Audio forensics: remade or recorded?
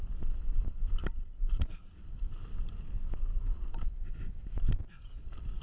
recorded